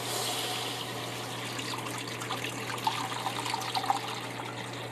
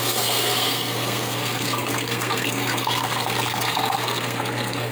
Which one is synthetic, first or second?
second